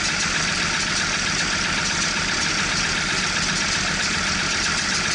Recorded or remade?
recorded